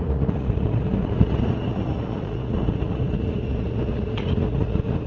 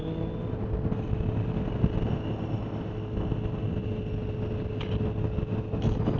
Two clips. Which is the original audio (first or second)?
second